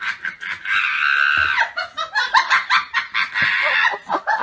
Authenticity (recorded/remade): recorded